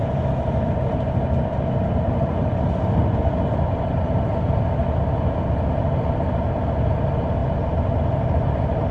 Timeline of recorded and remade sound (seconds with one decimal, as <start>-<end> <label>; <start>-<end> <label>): 0.0-8.9 recorded